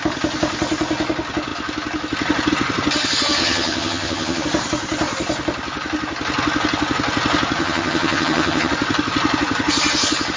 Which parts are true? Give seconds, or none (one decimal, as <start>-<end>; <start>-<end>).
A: 0.0-3.4; 4.4-7.6; 8.7-10.4